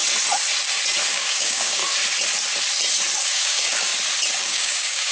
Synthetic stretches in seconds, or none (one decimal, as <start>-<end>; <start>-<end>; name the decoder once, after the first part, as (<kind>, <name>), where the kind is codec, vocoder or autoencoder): 1.1-1.8 (codec, DAC); 3.2-3.9; 4.4-5.1